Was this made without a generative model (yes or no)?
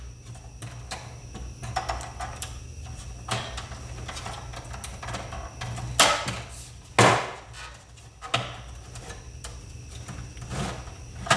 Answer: yes